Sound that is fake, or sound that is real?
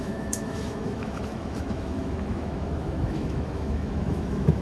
fake